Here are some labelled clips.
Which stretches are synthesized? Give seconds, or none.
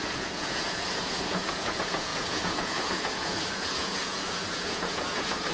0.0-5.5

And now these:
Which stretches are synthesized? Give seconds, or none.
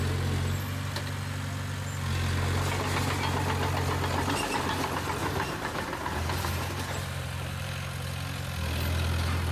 5.2-7.7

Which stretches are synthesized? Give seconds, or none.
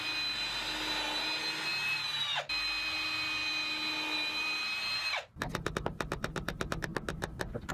none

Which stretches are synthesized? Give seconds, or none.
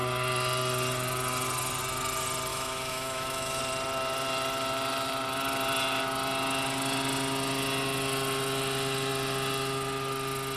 2.5-3.6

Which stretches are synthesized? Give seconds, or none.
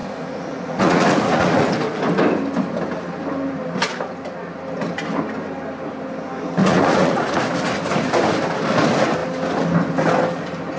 0.0-1.7; 6.6-7.4